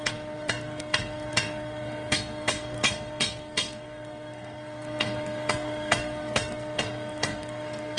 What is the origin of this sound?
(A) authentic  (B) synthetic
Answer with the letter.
B